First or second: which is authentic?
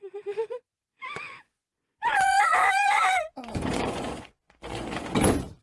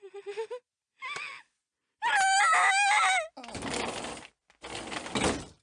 second